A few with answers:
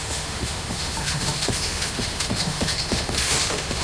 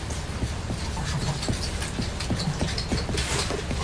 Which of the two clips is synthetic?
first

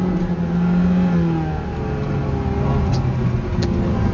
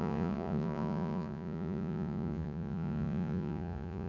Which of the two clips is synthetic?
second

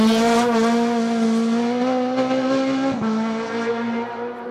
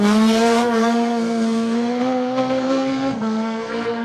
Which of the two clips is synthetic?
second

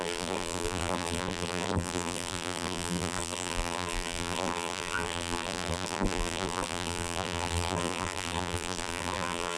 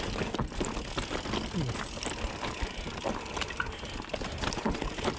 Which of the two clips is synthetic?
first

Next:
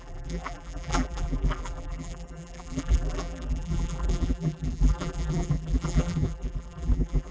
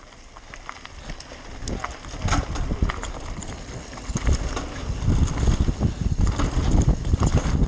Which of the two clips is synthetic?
first